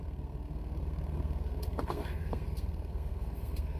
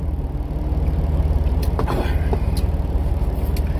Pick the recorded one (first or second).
second